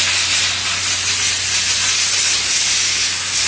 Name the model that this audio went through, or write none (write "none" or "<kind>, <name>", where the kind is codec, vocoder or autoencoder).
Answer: none